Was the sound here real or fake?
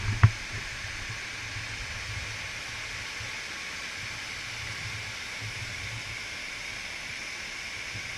real